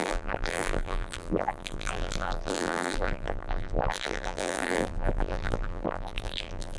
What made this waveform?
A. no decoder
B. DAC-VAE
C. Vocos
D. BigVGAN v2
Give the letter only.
D